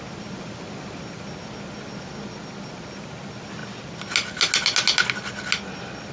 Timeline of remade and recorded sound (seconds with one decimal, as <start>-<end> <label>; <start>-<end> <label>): 0.0-6.1 recorded